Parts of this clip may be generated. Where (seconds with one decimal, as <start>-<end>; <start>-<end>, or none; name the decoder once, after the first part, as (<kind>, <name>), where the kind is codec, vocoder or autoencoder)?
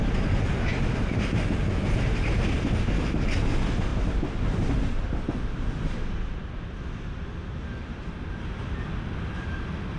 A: none